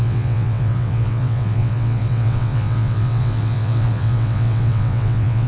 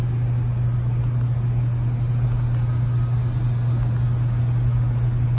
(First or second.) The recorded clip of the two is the second